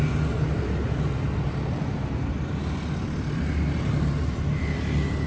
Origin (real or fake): real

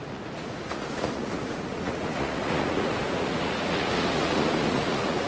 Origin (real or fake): fake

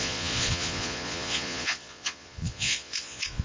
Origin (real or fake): fake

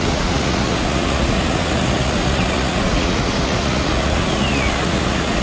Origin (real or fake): fake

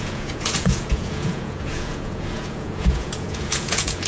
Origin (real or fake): fake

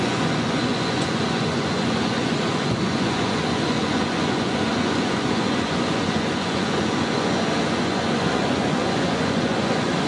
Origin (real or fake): fake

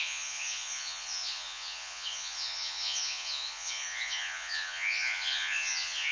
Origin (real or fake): fake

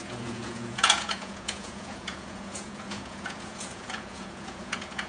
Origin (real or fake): fake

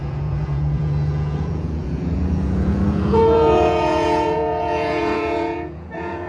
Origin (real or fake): fake